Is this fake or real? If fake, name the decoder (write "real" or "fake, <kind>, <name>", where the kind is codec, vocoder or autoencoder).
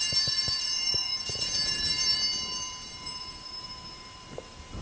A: fake, vocoder, BigVGAN v2